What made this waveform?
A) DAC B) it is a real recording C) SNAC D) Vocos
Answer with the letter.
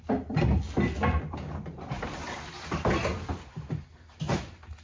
B